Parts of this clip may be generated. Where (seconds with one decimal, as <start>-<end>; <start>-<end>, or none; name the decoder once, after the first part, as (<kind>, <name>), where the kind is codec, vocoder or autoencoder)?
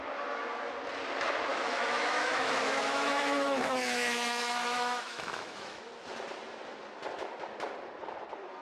1.5-5.8 (autoencoder, DAC-VAE)